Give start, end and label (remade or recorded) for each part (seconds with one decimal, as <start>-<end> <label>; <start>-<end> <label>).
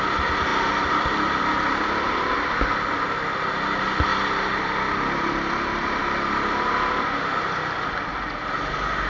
0.0-0.5 recorded; 0.5-1.4 remade; 1.4-4.1 recorded; 4.1-6.0 remade; 6.0-9.1 recorded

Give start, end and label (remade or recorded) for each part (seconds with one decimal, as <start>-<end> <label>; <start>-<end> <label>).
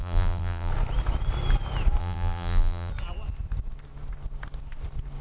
0.0-0.7 remade; 0.7-2.0 recorded; 2.0-2.9 remade; 2.9-5.2 recorded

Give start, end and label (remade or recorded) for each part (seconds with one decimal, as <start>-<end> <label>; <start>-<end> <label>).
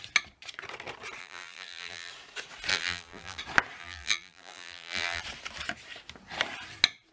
0.0-1.2 recorded; 1.2-2.1 remade; 2.1-2.7 recorded; 2.7-3.4 remade; 3.4-3.8 recorded; 3.8-5.2 remade; 5.2-7.1 recorded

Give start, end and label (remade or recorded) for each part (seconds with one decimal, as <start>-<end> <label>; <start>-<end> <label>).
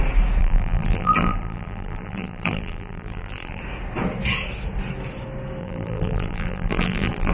0.0-0.4 recorded; 0.4-3.6 remade; 3.6-5.6 recorded; 5.6-7.3 remade